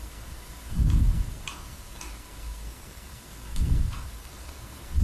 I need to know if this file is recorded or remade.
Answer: remade